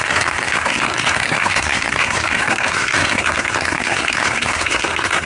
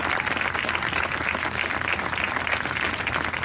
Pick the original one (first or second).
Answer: second